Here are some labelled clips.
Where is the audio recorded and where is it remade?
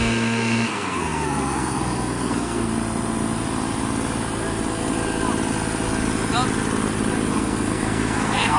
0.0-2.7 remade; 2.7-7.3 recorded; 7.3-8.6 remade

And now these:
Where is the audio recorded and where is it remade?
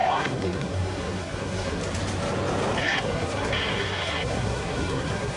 0.0-1.8 remade; 1.8-2.8 recorded; 2.8-5.4 remade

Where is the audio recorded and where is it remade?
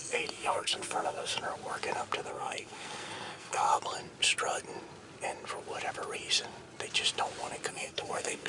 0.0-1.3 remade; 1.3-2.3 recorded; 2.3-3.7 remade; 3.7-7.7 recorded; 7.7-8.5 remade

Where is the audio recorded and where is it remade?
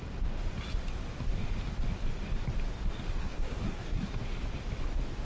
0.0-3.2 recorded; 3.2-4.1 remade; 4.1-5.2 recorded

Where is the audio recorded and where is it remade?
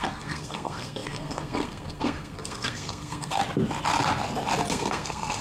0.0-3.4 remade; 3.4-4.7 recorded; 4.7-5.4 remade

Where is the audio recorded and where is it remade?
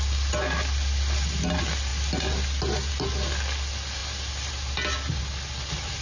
0.0-6.0 recorded